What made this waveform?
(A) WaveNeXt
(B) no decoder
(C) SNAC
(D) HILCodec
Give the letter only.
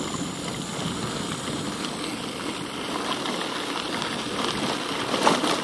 B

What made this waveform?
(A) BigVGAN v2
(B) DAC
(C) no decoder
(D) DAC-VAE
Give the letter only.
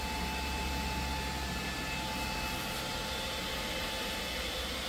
C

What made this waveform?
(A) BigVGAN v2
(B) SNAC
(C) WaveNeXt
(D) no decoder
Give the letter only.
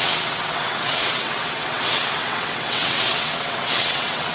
C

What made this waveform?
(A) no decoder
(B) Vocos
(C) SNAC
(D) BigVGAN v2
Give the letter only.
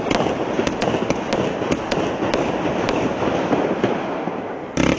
A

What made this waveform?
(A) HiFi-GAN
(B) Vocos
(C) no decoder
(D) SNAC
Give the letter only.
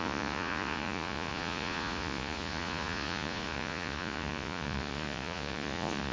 B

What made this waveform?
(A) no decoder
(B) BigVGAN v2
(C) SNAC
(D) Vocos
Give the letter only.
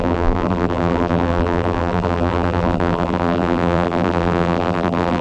B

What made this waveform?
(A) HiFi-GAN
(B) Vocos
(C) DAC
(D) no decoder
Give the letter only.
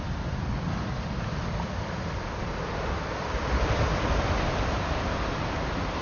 D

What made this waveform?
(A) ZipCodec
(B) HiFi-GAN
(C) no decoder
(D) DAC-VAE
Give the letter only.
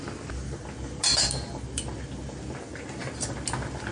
C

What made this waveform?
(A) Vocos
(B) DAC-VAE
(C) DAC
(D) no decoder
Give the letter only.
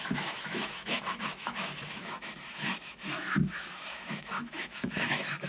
B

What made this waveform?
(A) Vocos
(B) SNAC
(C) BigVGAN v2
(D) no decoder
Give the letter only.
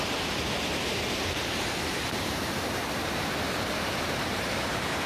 C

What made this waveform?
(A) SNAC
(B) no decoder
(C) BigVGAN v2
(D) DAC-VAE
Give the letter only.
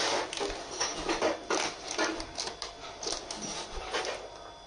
B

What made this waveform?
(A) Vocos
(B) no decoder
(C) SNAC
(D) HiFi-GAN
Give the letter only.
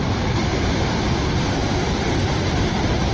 B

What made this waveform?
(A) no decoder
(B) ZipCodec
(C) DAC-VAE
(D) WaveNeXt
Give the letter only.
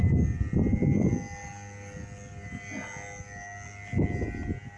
A